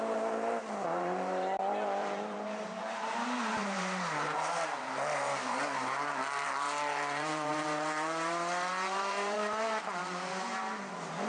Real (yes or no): no